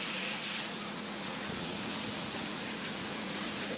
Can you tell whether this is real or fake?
fake